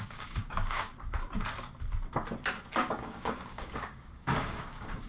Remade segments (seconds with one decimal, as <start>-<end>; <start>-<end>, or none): 0.0-0.9; 2.9-5.1